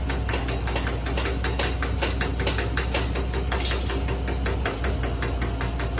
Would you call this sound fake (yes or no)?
no